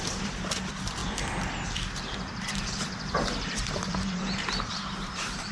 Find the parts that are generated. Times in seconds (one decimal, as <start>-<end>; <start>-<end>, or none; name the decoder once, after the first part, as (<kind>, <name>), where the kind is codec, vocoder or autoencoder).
0.0-1.0 (vocoder, BigVGAN v2); 2.5-5.5